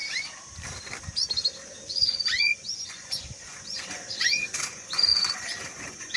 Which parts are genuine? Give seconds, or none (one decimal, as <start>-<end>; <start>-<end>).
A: 0.0-1.9